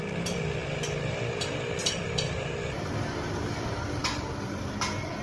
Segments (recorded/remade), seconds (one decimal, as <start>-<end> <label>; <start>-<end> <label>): 0.0-0.6 recorded; 0.6-1.4 remade; 1.4-1.8 recorded; 1.8-2.9 remade; 2.9-4.0 recorded; 4.0-4.6 remade; 4.6-5.2 recorded